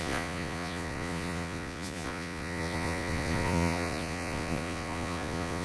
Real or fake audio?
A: fake